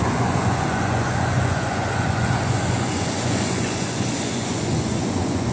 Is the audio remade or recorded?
remade